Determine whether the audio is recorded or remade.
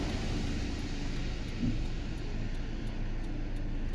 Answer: recorded